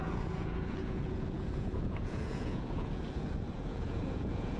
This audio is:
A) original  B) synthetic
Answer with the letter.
B